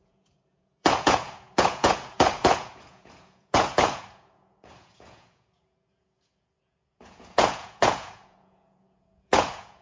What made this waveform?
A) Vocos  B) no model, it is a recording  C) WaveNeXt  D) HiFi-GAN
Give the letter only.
A